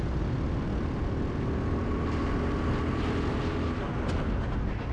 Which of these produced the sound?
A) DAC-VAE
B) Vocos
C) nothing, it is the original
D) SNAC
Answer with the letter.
C